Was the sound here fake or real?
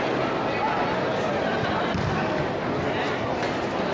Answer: real